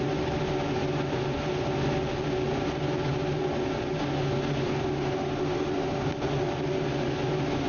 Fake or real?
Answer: real